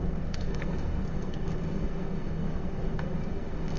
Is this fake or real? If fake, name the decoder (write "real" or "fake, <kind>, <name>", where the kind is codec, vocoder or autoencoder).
fake, codec, SNAC